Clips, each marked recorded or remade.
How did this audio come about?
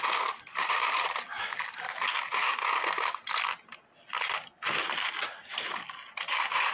recorded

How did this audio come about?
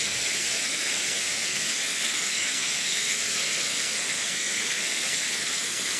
remade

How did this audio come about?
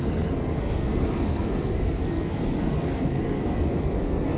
remade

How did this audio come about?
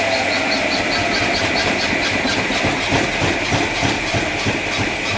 remade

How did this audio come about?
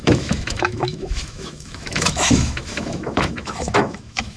remade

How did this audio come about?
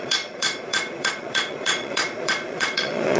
remade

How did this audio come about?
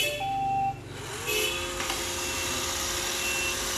recorded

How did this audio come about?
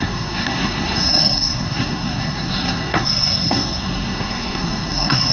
remade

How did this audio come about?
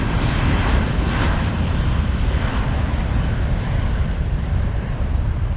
remade